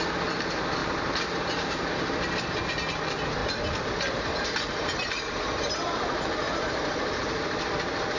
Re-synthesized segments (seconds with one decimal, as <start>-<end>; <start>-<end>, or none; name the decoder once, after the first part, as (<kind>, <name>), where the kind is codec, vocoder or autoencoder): 0.8-1.9 (vocoder, BigVGAN v2); 3.4-8.2